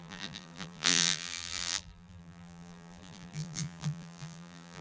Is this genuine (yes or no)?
no